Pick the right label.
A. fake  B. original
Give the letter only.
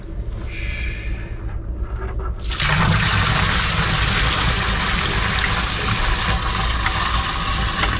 B